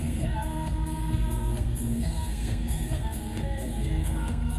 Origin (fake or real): fake